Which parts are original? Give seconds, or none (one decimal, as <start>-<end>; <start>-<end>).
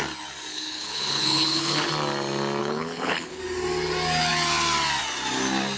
0.0-0.5; 1.9-2.6; 3.4-5.8